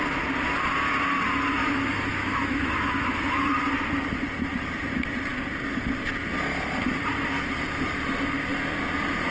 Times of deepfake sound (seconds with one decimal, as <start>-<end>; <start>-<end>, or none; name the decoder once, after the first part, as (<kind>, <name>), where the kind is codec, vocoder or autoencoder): 1.6-3.6 (autoencoder, DAC-VAE)